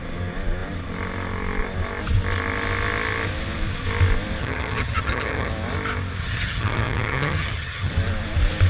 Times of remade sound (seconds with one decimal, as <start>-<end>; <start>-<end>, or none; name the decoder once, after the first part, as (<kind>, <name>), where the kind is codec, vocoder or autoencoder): 4.4-5.5 (vocoder, HiFi-GAN); 6.2-7.9